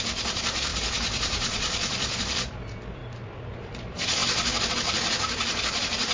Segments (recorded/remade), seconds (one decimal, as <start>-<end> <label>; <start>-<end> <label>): 0.0-0.7 remade; 0.7-2.2 recorded; 2.2-3.0 remade; 3.0-3.6 recorded; 3.6-4.2 remade; 4.2-4.7 recorded; 4.7-6.1 remade